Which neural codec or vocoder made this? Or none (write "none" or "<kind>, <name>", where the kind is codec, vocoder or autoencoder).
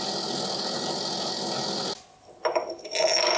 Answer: none